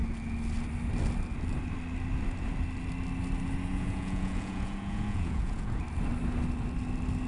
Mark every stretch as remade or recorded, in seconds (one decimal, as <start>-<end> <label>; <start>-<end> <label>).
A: 0.0-3.7 recorded; 3.7-5.8 remade; 5.8-7.3 recorded